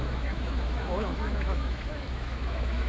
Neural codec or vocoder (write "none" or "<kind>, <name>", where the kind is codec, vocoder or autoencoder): autoencoder, DAC-VAE